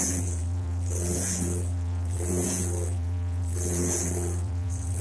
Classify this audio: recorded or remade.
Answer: remade